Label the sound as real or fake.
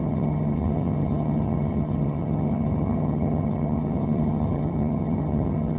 fake